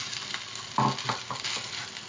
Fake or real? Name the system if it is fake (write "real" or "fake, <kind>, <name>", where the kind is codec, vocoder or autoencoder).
real